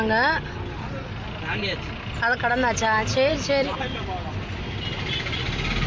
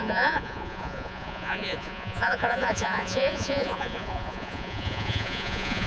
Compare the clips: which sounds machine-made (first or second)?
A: second